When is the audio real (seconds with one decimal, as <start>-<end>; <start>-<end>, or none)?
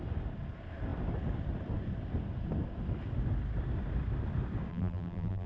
0.0-4.7